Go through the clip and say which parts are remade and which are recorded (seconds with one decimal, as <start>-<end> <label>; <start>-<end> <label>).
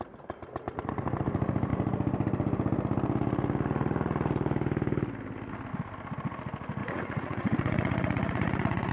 0.0-6.8 recorded; 6.8-8.9 remade